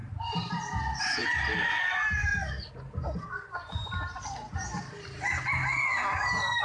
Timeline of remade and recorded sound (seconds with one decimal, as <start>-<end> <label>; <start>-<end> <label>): 0.0-0.5 remade; 0.5-6.6 recorded